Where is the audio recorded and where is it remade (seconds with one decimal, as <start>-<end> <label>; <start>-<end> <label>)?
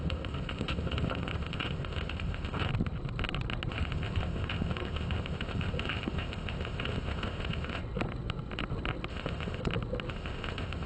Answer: 0.0-2.7 remade; 2.7-3.7 recorded; 3.7-7.8 remade; 7.8-9.1 recorded; 9.1-9.6 remade; 9.6-10.1 recorded; 10.1-10.9 remade